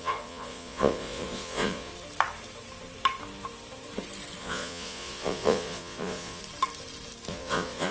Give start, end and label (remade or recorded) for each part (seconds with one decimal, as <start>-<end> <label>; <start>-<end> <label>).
0.0-1.9 remade; 1.9-4.4 recorded; 4.4-6.4 remade; 6.4-7.3 recorded; 7.3-7.9 remade